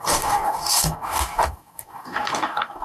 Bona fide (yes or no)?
no